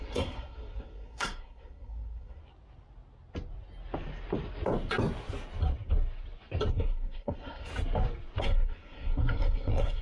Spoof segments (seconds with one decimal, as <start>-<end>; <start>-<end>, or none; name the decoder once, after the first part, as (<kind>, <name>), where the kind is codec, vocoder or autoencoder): 0.0-2.4 (codec, SNAC); 6.7-7.7; 8.4-10.0